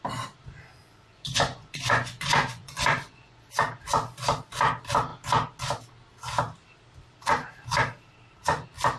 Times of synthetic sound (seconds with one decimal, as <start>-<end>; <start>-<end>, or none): 0.8-3.6